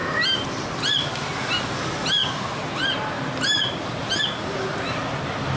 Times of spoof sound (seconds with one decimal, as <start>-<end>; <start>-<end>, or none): none